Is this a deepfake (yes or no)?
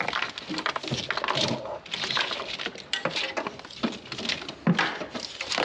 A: no